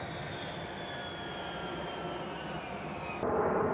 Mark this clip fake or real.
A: real